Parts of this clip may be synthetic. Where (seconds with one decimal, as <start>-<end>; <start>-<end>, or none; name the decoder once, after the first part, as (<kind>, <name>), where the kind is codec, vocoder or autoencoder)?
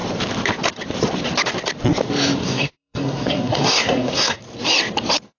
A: 2.4-4.4 (codec, SNAC)